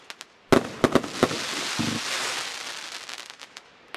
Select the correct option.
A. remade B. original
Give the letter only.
B